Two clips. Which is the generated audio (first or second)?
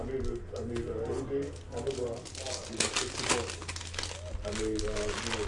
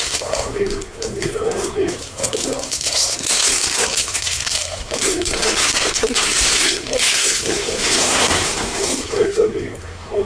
second